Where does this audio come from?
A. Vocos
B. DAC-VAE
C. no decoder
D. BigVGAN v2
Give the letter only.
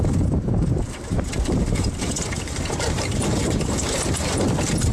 D